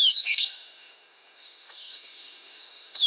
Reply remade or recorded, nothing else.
remade